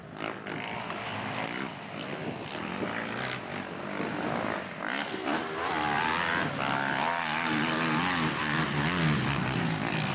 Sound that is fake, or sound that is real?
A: real